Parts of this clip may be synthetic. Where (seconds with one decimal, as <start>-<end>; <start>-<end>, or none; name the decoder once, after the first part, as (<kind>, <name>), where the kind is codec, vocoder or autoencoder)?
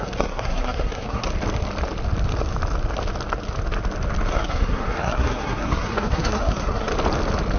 0.0-1.3 (codec, SNAC); 4.3-6.9